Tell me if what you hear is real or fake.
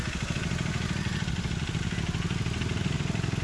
real